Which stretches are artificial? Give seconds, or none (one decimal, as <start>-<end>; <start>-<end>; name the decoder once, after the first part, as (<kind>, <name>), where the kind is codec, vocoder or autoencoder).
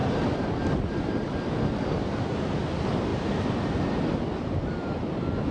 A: 0.0-1.0 (vocoder, BigVGAN v2); 3.1-4.6